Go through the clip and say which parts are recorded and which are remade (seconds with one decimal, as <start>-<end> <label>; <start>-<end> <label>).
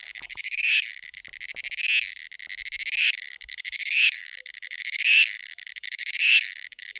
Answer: 0.0-1.2 remade; 1.2-3.0 recorded; 3.0-7.0 remade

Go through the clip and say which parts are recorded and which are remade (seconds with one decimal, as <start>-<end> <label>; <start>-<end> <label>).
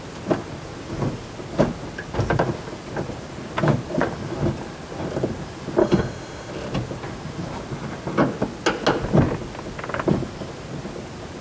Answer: 0.0-5.8 recorded; 5.8-6.5 remade; 6.5-11.4 recorded